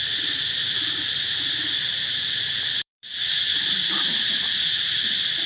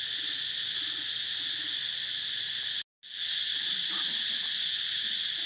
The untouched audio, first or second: second